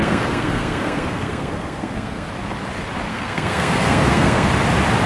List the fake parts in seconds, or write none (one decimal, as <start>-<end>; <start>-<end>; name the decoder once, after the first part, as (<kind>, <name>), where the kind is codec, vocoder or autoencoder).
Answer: 0.0-2.3 (codec, SNAC); 3.1-4.5